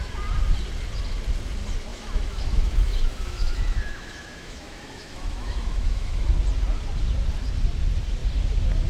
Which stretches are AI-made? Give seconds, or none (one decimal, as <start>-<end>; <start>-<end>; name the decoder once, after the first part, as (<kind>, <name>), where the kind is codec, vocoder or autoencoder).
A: 1.9-6.3 (autoencoder, DAC-VAE)